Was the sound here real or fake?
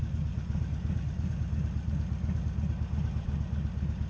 real